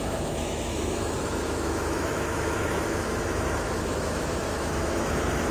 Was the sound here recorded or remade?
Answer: remade